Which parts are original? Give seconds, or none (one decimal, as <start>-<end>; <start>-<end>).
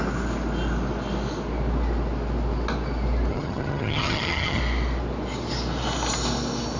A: 0.0-3.3; 4.6-6.8